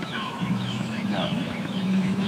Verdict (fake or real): fake